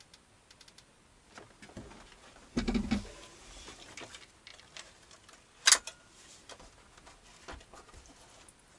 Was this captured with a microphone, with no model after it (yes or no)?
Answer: yes